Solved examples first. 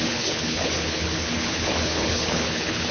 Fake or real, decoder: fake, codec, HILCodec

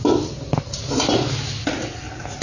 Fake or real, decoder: real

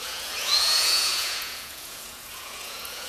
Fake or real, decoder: fake, vocoder, Vocos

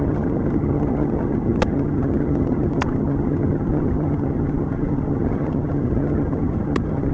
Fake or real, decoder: fake, vocoder, HiFi-GAN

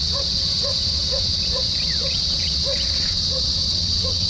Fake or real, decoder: fake, vocoder, WaveNeXt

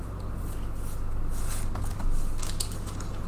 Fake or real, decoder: real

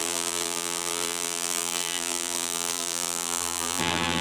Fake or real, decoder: fake, vocoder, BigVGAN v2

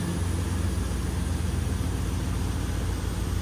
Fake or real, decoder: real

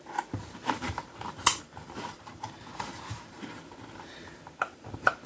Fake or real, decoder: fake, vocoder, BigVGAN v2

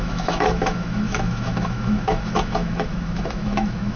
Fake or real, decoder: fake, autoencoder, DAC-VAE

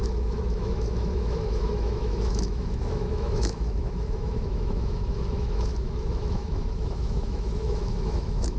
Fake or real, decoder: fake, autoencoder, DAC-VAE